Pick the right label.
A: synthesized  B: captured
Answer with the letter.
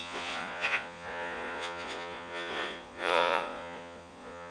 A